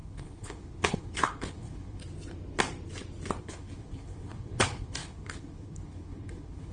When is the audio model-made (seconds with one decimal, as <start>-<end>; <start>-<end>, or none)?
0.0-2.0; 3.4-6.7